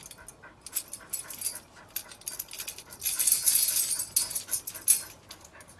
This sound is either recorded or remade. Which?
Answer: recorded